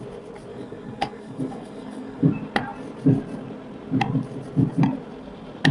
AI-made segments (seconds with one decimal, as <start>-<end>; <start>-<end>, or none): 0.5-2.3